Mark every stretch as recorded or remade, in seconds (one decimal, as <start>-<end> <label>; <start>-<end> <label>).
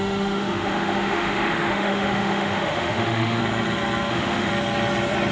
0.0-3.4 remade; 3.4-4.1 recorded; 4.1-4.5 remade; 4.5-5.3 recorded